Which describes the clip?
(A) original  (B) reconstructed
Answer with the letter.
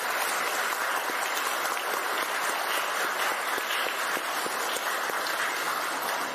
A